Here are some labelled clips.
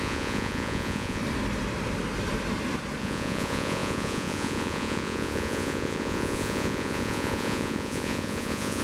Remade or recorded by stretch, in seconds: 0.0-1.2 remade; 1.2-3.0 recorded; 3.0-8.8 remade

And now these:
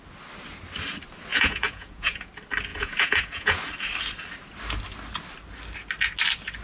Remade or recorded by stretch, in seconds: 0.0-1.3 recorded; 1.3-2.3 remade; 2.3-2.7 recorded; 2.7-3.6 remade; 3.6-6.6 recorded

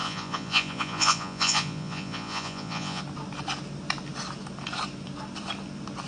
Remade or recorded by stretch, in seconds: 0.0-3.0 remade; 3.0-6.1 recorded

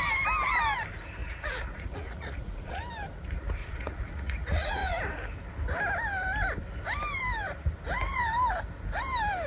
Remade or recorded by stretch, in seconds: 0.0-1.2 recorded; 1.2-2.8 remade; 2.8-3.6 recorded; 3.6-5.0 remade; 5.0-9.5 recorded